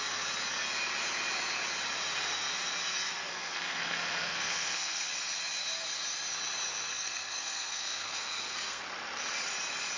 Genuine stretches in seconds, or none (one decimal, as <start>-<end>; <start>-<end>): 0.0-3.3; 5.1-6.9; 8.8-10.0